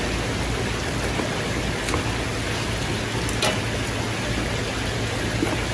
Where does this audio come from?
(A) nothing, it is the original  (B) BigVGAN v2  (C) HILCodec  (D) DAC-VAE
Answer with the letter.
A